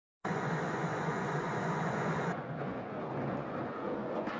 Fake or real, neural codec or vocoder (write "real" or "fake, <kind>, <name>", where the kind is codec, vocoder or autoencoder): fake, vocoder, Vocos